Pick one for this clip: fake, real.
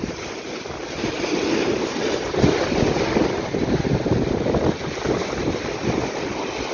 real